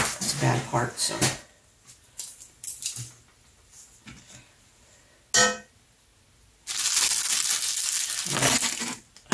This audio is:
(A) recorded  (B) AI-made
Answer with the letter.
A